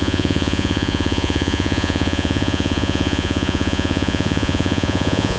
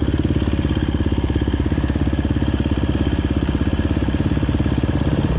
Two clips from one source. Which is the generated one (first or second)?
first